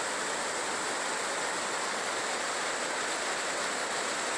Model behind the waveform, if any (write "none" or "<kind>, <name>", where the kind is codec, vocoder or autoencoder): none